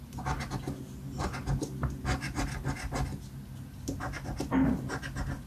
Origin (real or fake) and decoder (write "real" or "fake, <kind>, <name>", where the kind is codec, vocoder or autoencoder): real